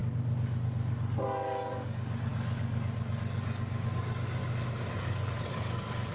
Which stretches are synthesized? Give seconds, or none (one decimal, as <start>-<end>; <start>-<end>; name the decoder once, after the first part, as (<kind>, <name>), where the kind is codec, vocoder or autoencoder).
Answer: 0.6-4.4 (codec, DAC); 5.0-6.1